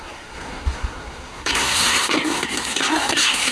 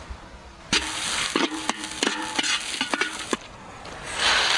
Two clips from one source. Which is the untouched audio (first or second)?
second